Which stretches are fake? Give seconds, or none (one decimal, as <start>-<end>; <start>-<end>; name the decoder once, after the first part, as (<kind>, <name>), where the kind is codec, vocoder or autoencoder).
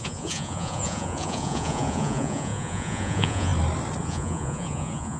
0.0-3.5 (vocoder, Vocos); 4.0-5.2